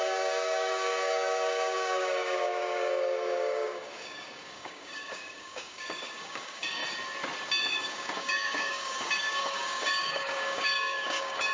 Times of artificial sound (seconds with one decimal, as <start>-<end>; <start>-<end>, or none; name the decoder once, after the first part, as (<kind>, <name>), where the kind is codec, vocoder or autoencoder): 0.0-6.8 (codec, DAC); 7.6-11.5